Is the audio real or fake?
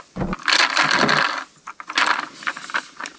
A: real